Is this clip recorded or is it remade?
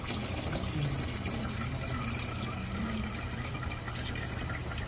recorded